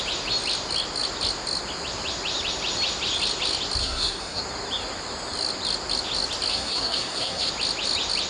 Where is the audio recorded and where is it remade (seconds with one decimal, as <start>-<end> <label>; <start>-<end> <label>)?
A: 0.0-3.8 recorded; 3.8-4.4 remade; 4.4-6.5 recorded; 6.5-7.5 remade; 7.5-8.3 recorded